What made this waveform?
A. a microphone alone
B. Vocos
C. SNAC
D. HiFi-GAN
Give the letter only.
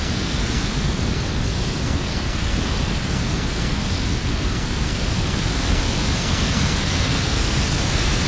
C